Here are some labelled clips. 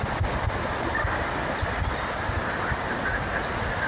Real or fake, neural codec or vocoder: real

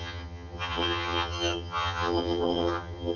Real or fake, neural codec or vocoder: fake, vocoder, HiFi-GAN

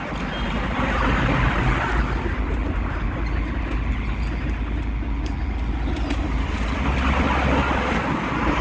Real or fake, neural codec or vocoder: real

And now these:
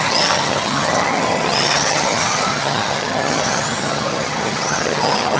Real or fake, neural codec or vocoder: fake, vocoder, HiFi-GAN